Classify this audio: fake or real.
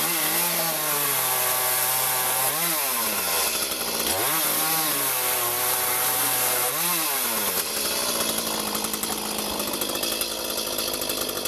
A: real